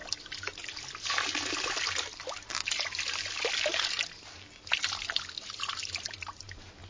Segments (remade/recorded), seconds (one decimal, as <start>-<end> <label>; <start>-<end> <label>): 0.0-6.9 recorded